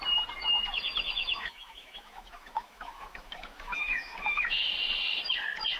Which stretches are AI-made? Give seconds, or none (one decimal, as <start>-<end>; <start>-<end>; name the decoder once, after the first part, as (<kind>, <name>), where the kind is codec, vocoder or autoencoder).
1.2-4.7 (autoencoder, DAC-VAE)